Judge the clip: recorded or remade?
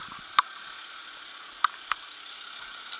recorded